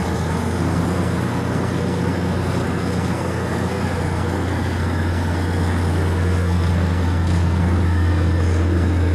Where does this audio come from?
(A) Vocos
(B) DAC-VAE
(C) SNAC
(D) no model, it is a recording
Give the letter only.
C